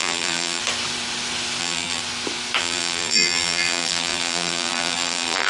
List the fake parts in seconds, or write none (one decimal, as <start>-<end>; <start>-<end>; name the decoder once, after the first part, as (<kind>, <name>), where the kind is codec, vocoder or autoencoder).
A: 0.0-0.6 (vocoder, BigVGAN v2); 1.6-2.0; 2.6-5.5